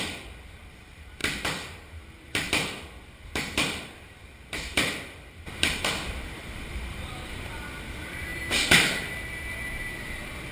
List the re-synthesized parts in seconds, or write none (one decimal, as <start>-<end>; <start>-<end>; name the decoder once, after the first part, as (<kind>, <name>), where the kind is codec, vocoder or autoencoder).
0.0-10.5 (vocoder, BigVGAN v2)